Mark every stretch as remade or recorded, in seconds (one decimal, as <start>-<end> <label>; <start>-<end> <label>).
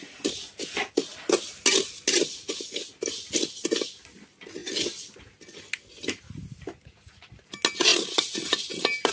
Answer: 0.0-9.1 recorded